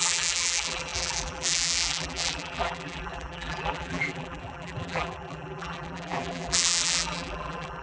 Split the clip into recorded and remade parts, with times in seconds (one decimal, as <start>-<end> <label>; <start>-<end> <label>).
0.0-7.8 remade